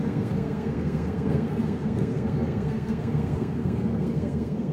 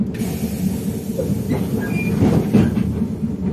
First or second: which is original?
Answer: second